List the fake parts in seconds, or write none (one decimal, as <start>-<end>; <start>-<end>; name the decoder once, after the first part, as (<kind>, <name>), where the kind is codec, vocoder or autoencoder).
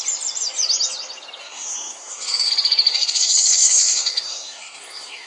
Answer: 1.4-2.5 (codec, SNAC); 2.9-5.3